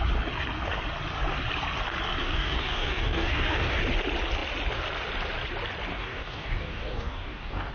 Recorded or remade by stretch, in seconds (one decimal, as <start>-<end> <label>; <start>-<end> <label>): 0.0-2.2 recorded; 2.2-3.8 remade; 3.8-5.9 recorded; 5.9-7.7 remade